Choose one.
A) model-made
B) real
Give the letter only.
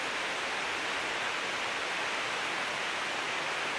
B